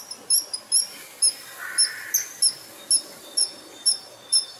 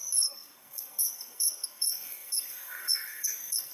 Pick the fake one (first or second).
second